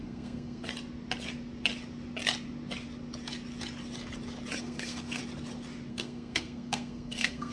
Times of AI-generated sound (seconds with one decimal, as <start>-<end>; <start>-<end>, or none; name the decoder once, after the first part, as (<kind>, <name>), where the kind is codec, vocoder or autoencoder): 0.0-0.7 (codec, SNAC); 4.6-5.2; 5.9-7.5